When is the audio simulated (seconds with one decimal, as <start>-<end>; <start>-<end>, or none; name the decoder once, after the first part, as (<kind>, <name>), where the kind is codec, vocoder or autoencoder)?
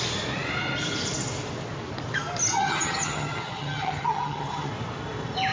2.5-4.7 (vocoder, HiFi-GAN)